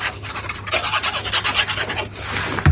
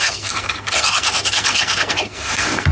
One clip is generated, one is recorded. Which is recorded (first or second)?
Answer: first